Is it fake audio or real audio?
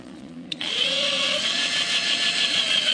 fake